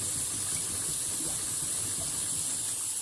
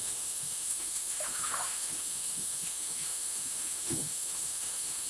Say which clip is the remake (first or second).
second